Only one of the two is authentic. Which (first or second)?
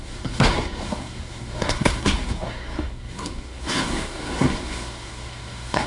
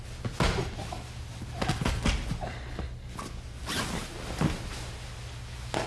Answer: second